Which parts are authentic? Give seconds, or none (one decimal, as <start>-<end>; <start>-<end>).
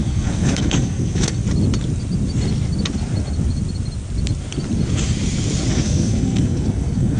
1.4-5.7